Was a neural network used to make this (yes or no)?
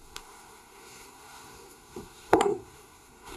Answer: yes